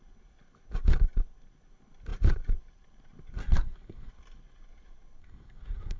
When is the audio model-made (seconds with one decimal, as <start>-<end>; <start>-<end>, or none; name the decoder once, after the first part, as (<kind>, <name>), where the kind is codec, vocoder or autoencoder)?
3.4-4.1 (codec, SNAC); 5.2-6.0